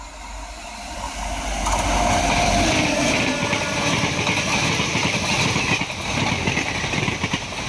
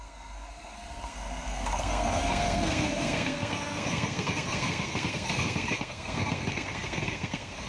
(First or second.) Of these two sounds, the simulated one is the second